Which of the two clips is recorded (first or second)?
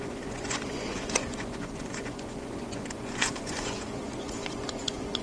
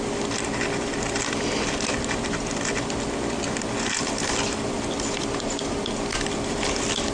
second